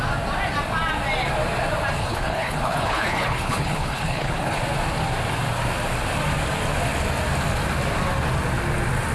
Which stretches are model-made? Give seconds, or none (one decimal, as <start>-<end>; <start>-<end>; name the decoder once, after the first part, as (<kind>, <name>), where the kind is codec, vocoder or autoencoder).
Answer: 2.0-4.6 (codec, HILCodec)